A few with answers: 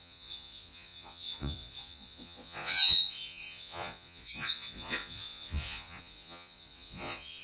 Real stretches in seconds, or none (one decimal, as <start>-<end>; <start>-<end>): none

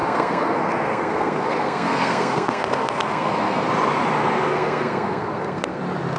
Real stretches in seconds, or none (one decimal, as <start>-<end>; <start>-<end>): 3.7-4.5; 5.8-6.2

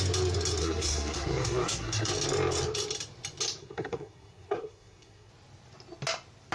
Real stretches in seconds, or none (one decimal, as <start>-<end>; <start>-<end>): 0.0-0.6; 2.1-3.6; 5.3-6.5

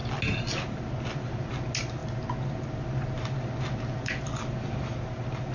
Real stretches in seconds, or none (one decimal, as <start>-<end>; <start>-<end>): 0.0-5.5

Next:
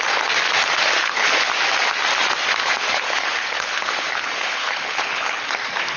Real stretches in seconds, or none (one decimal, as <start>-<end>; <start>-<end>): 0.0-1.0; 1.5-2.6; 5.4-6.0

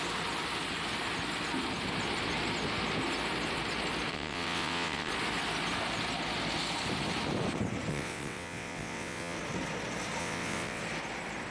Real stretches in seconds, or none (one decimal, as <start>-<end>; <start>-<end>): 0.0-4.1; 5.1-7.9; 9.4-10.2; 10.8-11.5